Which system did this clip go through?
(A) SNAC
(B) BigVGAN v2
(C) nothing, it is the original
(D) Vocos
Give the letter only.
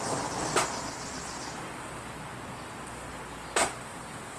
C